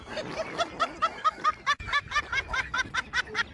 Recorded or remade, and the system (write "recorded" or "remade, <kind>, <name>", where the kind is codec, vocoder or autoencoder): recorded